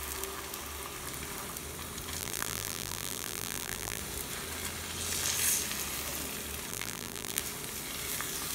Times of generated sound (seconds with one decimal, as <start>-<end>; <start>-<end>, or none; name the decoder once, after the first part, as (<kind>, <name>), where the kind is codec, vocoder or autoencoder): 2.2-4.0 (vocoder, BigVGAN v2); 6.7-7.4